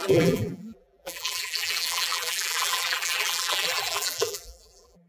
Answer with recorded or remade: remade